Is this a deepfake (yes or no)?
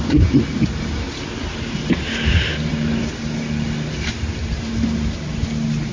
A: no